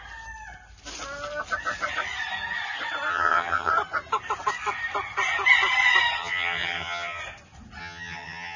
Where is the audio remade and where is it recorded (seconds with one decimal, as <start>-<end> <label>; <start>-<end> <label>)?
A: 0.0-3.1 recorded; 3.1-3.7 remade; 3.7-6.2 recorded; 6.2-7.2 remade; 7.2-7.8 recorded; 7.8-8.6 remade